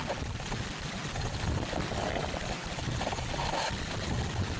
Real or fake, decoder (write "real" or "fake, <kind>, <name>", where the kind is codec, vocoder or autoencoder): real